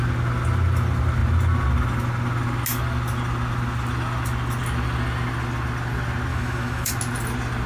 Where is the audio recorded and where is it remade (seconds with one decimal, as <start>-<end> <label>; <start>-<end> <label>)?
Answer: 0.0-6.3 recorded; 6.3-6.9 remade; 6.9-7.7 recorded